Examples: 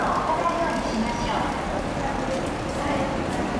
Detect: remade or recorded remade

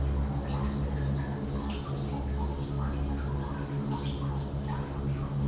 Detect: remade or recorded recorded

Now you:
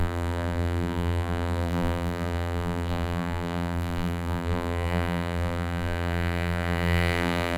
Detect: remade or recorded remade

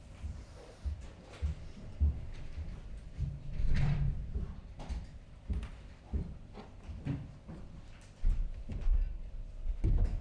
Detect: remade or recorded remade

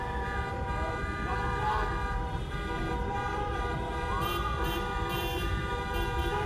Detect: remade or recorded remade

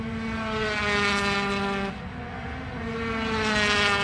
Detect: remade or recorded recorded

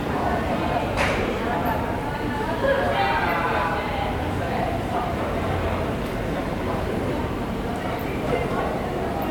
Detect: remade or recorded remade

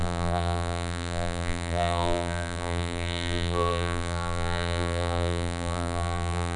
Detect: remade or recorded remade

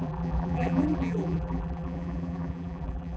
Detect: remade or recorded remade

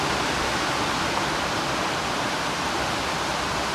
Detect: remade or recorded recorded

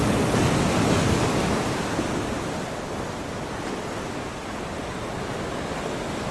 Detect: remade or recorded recorded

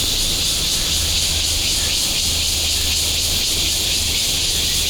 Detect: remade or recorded recorded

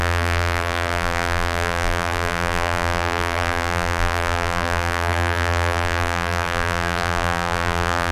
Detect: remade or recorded remade